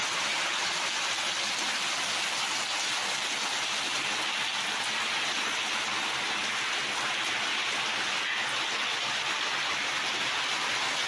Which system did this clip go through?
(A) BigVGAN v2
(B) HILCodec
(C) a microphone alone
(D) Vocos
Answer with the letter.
C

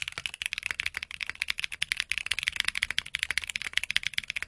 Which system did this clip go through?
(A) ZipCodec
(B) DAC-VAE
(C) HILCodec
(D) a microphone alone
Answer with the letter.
D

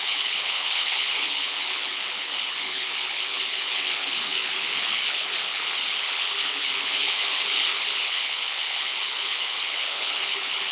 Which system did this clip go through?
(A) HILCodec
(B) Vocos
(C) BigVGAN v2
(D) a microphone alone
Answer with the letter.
A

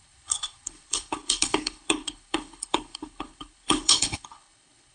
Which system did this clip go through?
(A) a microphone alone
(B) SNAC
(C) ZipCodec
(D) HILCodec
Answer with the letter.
D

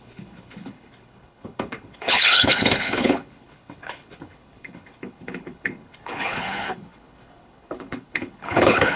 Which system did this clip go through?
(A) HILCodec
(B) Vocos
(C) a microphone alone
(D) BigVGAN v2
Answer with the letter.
A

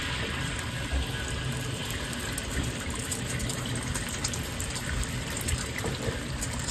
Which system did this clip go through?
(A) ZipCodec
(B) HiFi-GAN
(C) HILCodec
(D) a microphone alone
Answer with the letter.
D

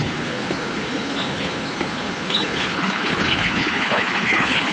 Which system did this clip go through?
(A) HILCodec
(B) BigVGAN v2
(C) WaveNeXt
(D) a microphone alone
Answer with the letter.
A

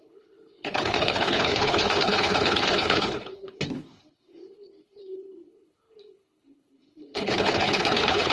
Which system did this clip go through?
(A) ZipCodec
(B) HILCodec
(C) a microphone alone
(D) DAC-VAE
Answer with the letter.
B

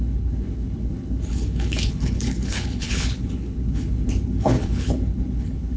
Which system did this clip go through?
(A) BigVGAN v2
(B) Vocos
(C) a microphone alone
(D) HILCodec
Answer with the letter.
D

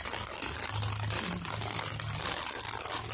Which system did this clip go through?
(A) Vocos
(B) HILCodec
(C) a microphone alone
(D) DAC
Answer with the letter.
C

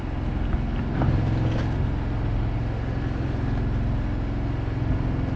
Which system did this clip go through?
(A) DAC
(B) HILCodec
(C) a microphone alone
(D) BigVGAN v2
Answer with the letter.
C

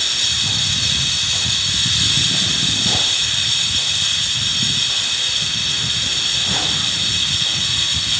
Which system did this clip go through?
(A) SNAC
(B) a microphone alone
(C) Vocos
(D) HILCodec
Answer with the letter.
B